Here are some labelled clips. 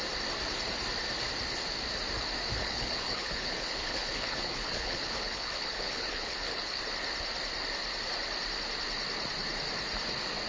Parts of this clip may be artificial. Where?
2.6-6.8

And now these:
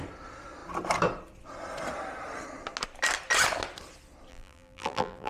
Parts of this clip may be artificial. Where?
4.3-5.3

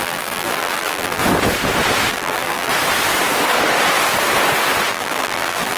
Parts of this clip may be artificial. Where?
0.0-1.2; 2.1-2.7; 4.9-5.8

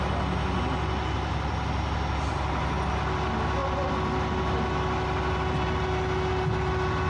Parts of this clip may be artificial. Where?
none

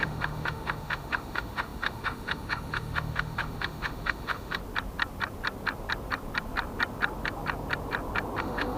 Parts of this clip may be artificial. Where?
0.0-4.6; 8.4-8.8

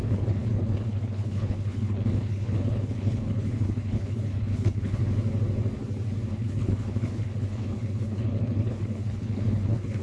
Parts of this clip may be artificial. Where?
0.0-5.0; 6.3-10.0

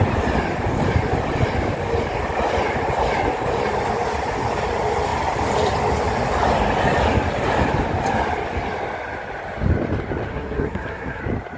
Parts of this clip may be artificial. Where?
10.3-11.2

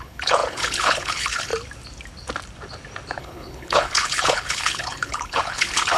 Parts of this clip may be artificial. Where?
0.0-1.5; 3.2-6.0